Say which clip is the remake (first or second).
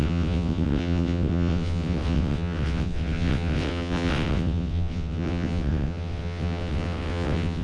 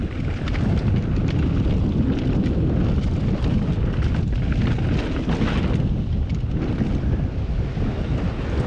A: first